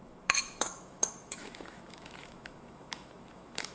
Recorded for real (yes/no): no